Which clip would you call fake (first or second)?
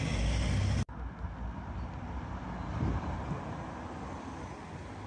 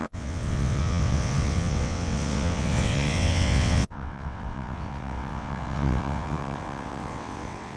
second